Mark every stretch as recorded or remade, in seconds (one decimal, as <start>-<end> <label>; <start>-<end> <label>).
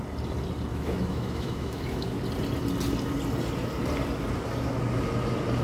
0.0-0.7 recorded; 0.7-2.2 remade; 2.2-5.6 recorded